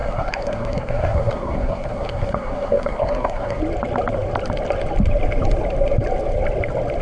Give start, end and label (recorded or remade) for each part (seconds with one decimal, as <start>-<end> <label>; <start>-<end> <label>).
0.0-3.6 remade; 3.6-7.0 recorded